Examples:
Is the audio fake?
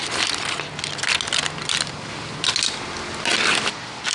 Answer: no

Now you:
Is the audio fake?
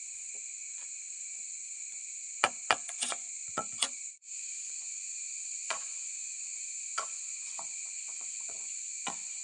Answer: yes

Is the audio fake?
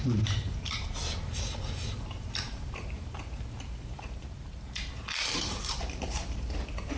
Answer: yes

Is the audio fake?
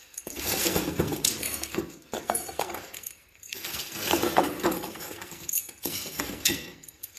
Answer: yes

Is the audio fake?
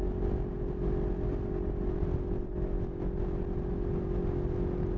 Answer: no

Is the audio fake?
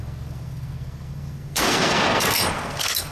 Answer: yes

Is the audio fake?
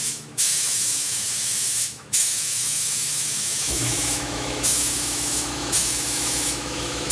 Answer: yes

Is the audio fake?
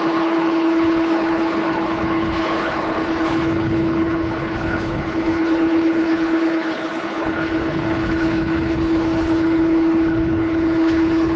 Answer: yes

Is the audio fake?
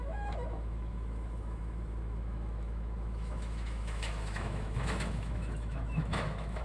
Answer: yes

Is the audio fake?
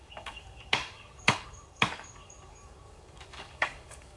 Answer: yes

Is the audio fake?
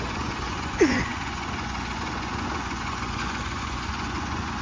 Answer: yes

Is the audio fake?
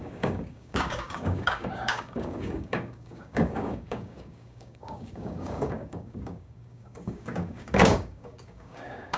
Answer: yes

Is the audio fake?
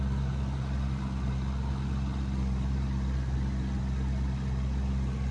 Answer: no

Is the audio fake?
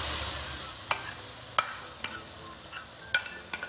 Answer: no